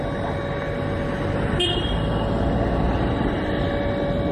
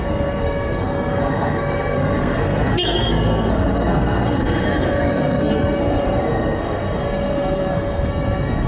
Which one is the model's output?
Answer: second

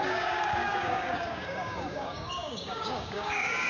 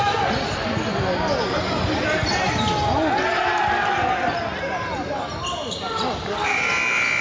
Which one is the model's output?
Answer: first